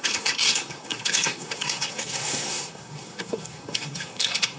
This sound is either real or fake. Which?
fake